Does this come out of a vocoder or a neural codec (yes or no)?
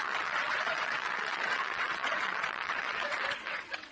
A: yes